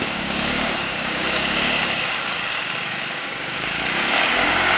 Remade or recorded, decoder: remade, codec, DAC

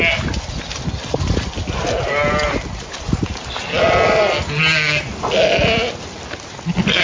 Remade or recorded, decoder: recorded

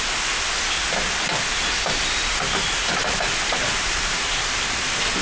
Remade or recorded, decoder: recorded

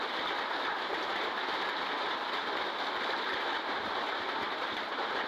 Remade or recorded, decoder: recorded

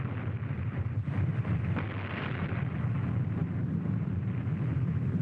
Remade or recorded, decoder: recorded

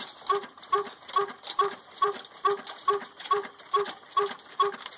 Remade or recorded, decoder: remade, vocoder, BigVGAN v2